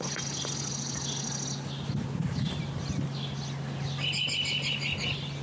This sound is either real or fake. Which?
real